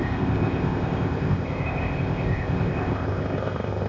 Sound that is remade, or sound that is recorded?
remade